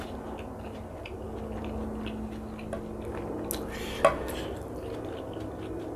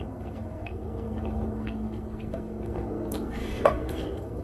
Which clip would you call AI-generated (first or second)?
second